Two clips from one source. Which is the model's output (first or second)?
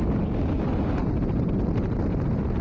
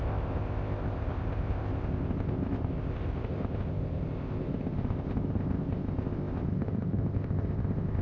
second